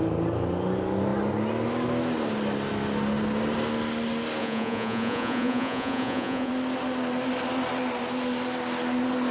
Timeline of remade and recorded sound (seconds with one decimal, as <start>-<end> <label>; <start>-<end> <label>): 0.0-4.4 recorded; 4.4-6.5 remade; 6.5-9.3 recorded